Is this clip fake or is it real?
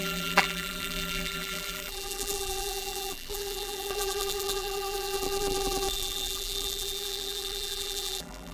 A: fake